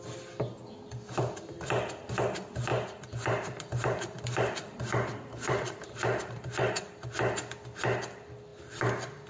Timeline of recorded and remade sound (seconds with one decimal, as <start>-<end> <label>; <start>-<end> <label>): 0.0-2.7 recorded; 2.7-6.8 remade; 6.8-9.3 recorded